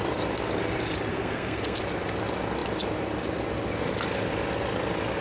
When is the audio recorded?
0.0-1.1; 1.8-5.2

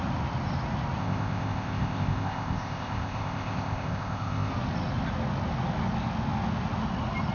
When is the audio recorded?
0.0-1.0; 4.5-7.3

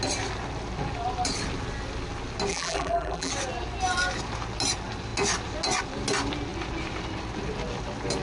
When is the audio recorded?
0.0-2.5; 3.3-8.2